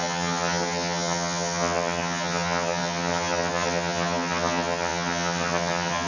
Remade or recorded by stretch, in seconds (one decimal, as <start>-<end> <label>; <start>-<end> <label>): 0.0-6.1 remade